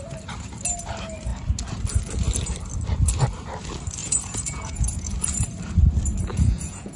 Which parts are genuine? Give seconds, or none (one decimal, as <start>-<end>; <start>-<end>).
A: 0.0-4.0; 5.1-6.3